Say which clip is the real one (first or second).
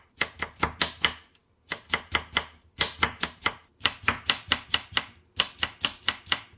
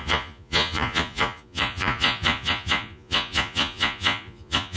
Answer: first